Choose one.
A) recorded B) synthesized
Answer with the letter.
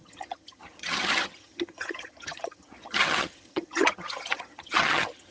B